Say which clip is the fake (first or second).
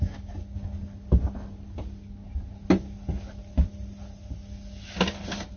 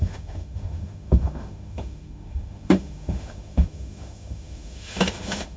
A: second